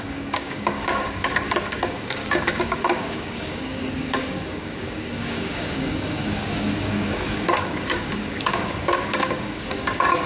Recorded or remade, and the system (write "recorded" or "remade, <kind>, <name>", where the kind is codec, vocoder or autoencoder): remade, codec, DAC